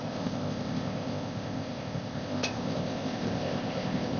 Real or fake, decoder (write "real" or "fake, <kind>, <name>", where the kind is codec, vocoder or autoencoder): fake, codec, ZipCodec